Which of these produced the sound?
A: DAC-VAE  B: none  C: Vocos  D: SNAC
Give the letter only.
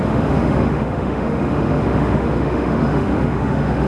A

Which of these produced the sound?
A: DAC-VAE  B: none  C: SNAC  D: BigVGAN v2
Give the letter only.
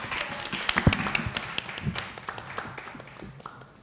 B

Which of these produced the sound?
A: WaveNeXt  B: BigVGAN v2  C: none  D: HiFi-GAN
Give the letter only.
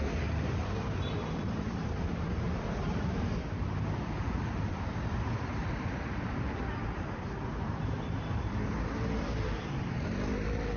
B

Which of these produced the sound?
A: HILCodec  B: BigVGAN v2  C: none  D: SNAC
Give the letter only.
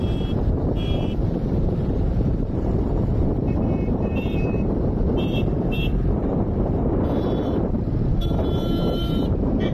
B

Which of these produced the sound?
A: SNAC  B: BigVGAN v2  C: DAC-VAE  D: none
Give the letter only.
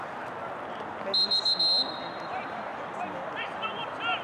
D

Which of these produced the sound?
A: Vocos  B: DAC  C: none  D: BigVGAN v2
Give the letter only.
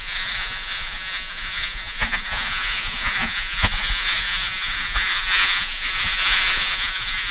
A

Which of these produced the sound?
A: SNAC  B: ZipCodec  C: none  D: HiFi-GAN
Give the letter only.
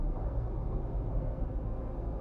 A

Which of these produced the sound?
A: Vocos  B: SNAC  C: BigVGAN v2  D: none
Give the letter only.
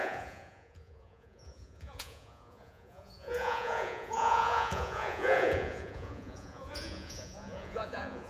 A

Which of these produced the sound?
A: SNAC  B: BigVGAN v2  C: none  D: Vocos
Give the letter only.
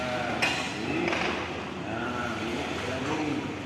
C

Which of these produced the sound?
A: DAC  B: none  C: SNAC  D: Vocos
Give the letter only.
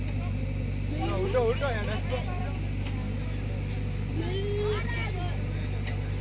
B